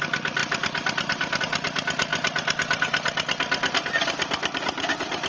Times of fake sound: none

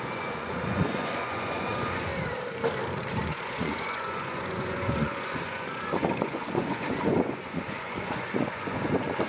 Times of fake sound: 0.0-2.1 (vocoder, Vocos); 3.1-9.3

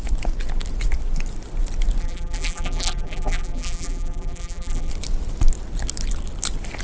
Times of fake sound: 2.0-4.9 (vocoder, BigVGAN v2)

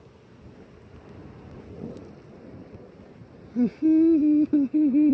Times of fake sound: 1.2-2.0 (vocoder, Vocos)

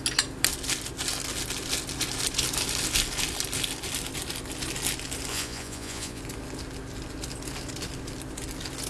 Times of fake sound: 5.3-6.2 (vocoder, Vocos)

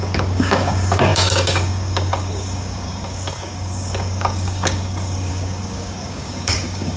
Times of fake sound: 0.0-7.0 (codec, DAC)

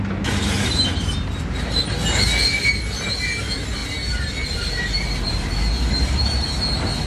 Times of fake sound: none

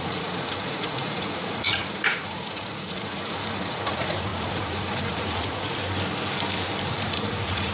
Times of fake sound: 0.0-5.8 (vocoder, Vocos); 6.9-7.7